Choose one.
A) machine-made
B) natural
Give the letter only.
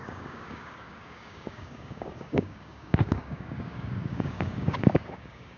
A